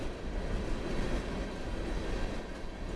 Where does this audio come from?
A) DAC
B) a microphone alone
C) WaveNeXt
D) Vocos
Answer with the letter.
B